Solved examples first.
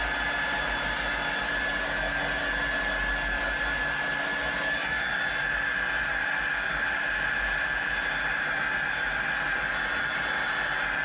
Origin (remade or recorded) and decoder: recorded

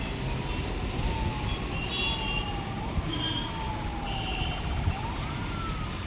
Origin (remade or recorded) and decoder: recorded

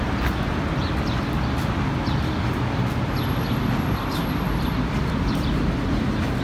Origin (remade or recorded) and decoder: recorded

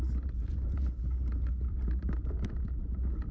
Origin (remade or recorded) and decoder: recorded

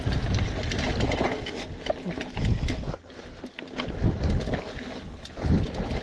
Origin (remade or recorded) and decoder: recorded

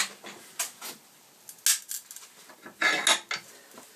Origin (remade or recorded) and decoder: recorded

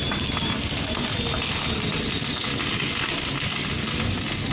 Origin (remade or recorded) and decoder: recorded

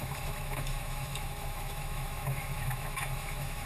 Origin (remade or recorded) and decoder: remade, autoencoder, DAC-VAE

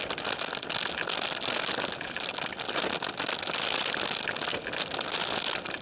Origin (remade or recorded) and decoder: recorded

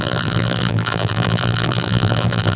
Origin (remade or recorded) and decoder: remade, vocoder, BigVGAN v2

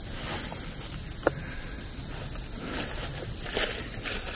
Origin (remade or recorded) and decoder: recorded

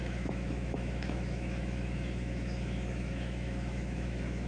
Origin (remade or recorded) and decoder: remade, autoencoder, DAC-VAE